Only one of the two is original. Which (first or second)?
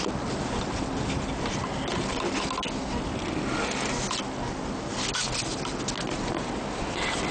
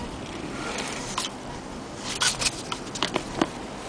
first